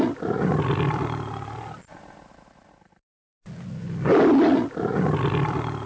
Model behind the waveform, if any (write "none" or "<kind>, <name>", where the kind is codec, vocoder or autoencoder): none